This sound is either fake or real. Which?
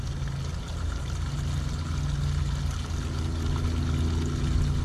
real